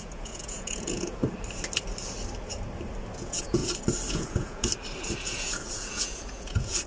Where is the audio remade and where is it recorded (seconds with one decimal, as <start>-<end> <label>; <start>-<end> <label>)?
0.0-1.2 remade; 1.2-3.2 recorded; 3.2-3.6 remade; 3.6-4.1 recorded; 4.1-4.7 remade; 4.7-5.2 recorded; 5.2-6.9 remade